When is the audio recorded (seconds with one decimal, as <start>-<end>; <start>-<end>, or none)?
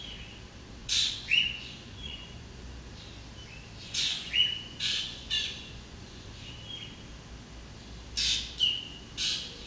0.0-0.8; 2.9-3.8; 6.6-9.7